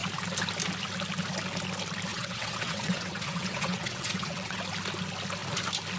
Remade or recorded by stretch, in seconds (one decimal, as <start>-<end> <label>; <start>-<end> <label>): 0.0-2.1 recorded; 2.1-4.6 remade; 4.6-6.0 recorded